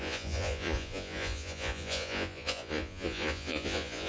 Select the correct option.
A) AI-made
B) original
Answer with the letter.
A